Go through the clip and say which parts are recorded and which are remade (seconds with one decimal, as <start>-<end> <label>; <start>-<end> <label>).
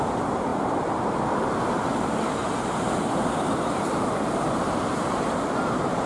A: 0.0-0.5 recorded; 0.5-1.2 remade; 1.2-2.4 recorded; 2.4-6.1 remade